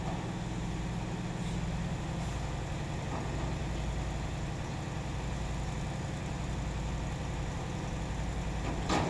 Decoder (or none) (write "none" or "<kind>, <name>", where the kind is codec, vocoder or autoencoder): none